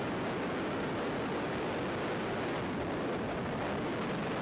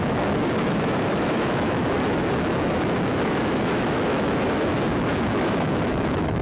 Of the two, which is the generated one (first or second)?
second